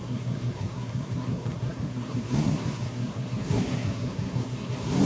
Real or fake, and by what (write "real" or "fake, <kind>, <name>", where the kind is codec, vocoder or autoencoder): fake, codec, SNAC